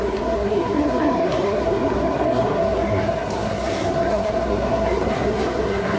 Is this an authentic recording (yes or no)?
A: no